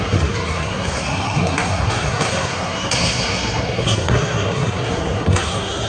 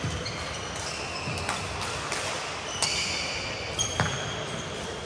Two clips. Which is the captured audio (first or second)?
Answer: second